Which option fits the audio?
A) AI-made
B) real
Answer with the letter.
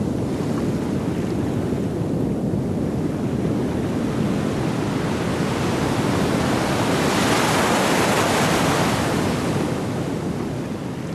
B